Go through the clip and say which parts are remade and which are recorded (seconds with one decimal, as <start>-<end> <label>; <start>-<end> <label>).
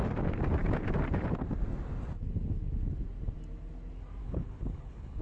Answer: 0.0-4.2 recorded; 4.2-5.2 remade